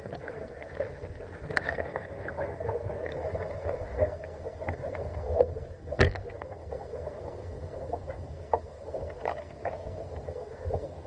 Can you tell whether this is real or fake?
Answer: fake